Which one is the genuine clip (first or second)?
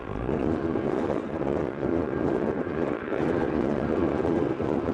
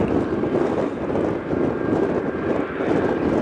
second